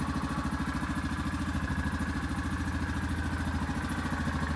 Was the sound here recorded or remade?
recorded